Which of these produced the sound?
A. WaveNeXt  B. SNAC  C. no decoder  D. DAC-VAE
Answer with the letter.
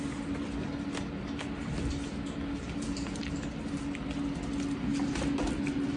C